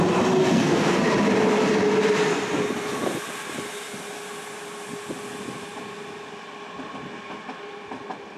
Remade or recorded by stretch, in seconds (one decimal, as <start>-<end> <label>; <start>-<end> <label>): 0.0-0.4 recorded; 0.4-1.0 remade; 1.0-8.4 recorded